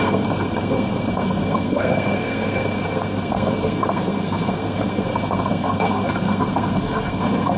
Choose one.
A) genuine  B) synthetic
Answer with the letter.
B